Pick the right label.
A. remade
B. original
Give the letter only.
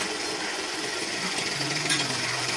A